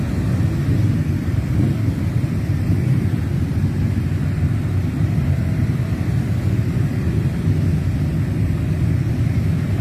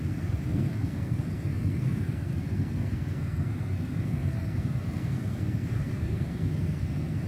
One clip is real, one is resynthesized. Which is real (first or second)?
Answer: first